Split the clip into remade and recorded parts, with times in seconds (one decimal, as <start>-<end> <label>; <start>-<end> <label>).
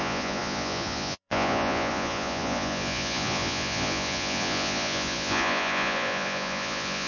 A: 0.0-7.1 remade